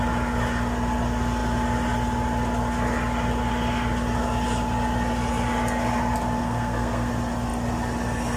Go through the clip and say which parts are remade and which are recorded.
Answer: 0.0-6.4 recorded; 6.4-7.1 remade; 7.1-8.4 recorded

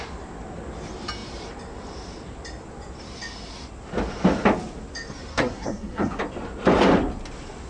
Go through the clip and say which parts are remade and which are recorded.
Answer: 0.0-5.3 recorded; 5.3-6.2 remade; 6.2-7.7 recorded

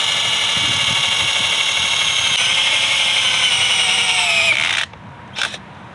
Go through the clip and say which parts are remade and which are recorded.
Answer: 0.0-5.9 recorded